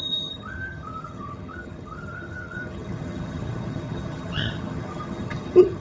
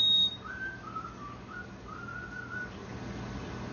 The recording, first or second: second